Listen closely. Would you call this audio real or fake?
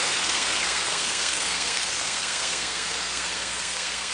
fake